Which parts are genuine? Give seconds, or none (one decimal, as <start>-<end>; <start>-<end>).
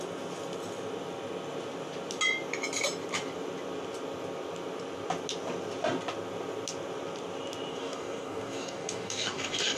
0.0-7.7